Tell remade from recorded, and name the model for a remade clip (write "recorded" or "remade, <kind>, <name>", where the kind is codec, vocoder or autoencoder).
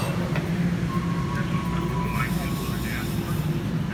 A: recorded